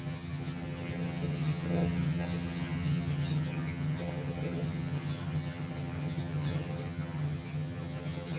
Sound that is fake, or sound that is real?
fake